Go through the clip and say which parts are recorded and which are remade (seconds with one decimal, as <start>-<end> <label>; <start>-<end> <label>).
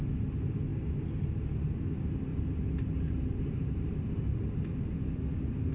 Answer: 0.0-2.3 recorded; 2.3-4.0 remade; 4.0-5.7 recorded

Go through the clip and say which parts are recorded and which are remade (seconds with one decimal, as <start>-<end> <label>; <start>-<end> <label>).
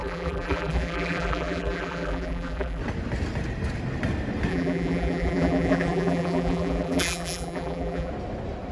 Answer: 0.0-2.8 remade; 2.8-4.5 recorded; 4.5-8.1 remade; 8.1-8.7 recorded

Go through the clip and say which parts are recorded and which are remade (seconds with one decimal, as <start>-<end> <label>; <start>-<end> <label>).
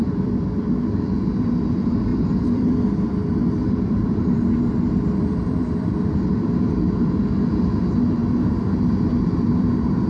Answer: 0.0-0.7 remade; 0.7-2.1 recorded; 2.1-6.7 remade; 6.7-10.1 recorded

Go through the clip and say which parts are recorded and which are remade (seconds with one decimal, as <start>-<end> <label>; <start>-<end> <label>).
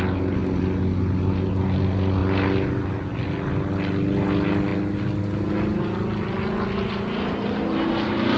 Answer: 0.0-2.2 recorded; 2.2-2.8 remade; 2.8-8.4 recorded